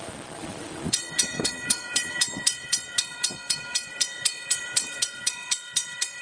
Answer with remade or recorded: remade